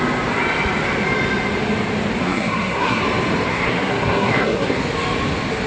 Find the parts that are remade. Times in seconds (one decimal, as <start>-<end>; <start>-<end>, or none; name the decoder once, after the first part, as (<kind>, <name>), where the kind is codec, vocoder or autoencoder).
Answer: 2.2-3.0 (codec, SNAC); 3.5-4.8